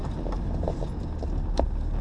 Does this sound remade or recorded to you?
recorded